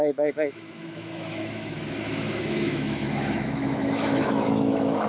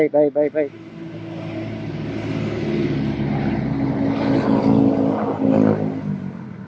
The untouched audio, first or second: second